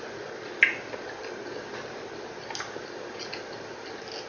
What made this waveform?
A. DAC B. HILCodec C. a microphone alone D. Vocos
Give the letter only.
C